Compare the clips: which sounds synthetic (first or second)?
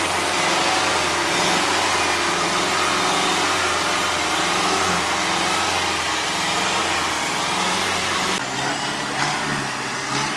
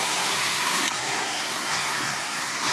second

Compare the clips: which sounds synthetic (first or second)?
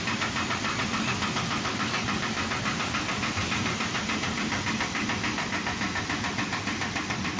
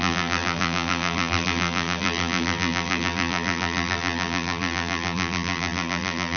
second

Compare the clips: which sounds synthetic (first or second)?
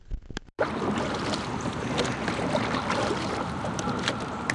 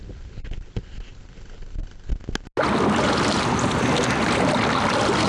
first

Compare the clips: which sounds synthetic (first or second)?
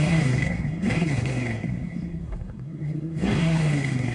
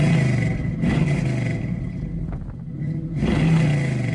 first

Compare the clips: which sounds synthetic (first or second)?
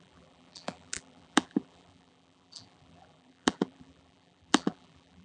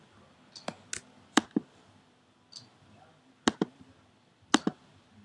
first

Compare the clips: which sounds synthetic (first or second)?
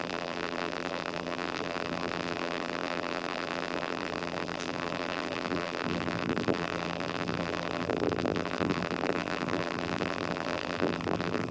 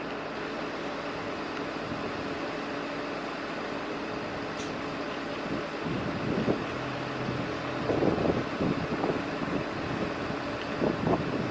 first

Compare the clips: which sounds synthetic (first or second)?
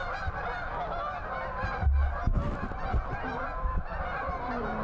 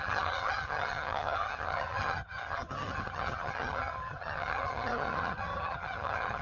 second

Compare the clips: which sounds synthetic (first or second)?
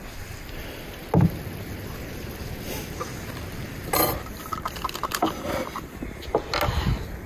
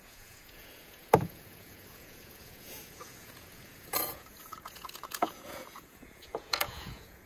second